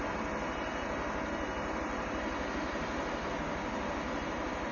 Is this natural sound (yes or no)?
yes